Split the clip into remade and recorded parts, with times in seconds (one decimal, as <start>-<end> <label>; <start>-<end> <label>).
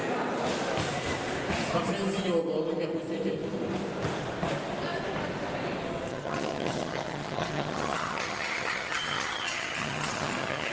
0.0-6.1 recorded; 6.1-10.7 remade